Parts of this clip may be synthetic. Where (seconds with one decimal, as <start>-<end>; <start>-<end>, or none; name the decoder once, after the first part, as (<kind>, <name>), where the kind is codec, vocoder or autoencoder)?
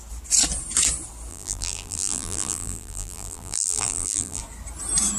1.3-4.4 (vocoder, BigVGAN v2)